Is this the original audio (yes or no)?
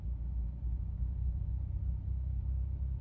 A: yes